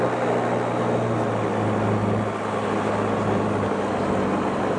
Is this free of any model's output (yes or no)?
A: yes